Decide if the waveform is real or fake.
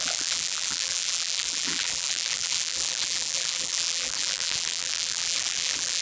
fake